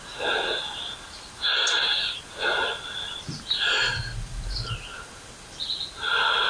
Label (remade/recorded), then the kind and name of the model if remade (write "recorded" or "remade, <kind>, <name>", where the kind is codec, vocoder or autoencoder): recorded